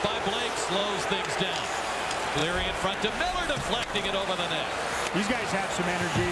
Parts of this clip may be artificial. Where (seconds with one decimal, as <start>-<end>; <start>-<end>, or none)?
none